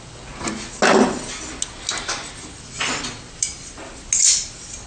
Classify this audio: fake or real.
real